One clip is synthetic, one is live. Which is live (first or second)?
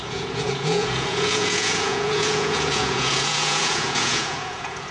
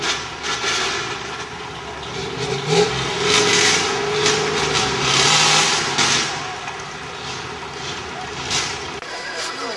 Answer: second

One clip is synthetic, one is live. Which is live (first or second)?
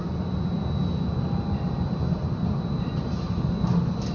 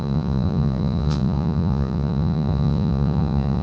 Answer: first